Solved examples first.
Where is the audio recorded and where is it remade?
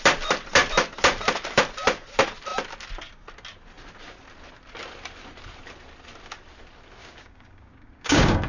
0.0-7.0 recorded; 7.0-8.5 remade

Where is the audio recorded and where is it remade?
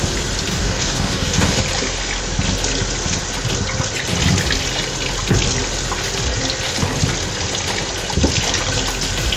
0.0-0.5 recorded; 0.5-1.6 remade; 1.6-9.4 recorded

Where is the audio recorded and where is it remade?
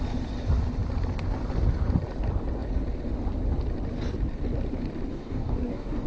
0.0-5.1 recorded; 5.1-6.1 remade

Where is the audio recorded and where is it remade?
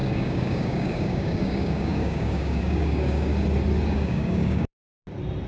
0.0-3.3 remade; 3.3-3.9 recorded; 3.9-4.8 remade; 4.8-5.5 recorded